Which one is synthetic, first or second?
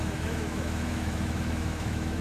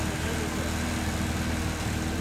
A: first